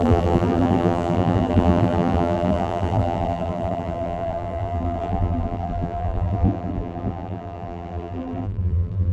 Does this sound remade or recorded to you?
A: remade